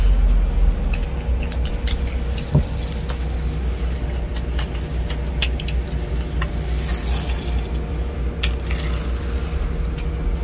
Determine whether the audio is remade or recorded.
recorded